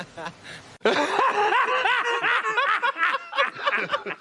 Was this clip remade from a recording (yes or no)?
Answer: no